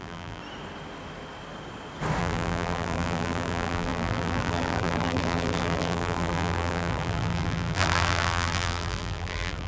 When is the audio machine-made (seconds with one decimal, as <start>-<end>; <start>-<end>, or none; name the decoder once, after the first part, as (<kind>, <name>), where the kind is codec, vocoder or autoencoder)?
0.0-0.4 (vocoder, BigVGAN v2); 2.2-9.7